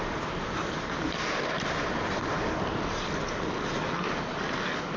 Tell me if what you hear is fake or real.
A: real